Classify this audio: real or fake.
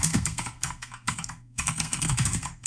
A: fake